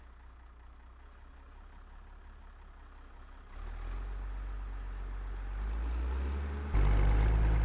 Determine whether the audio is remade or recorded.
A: recorded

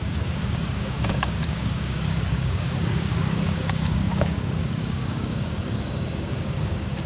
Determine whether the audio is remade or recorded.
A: remade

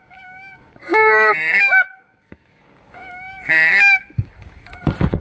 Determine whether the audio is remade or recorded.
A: remade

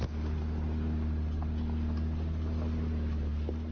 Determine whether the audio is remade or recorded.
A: recorded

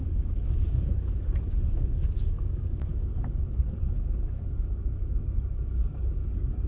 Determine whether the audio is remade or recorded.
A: remade